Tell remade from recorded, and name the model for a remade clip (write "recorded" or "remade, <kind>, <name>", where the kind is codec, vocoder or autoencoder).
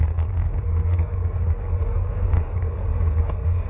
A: remade, codec, SNAC